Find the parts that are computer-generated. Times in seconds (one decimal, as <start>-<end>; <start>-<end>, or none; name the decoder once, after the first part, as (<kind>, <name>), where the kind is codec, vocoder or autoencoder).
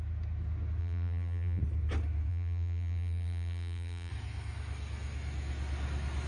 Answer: 0.8-1.6 (vocoder, BigVGAN v2); 2.3-4.1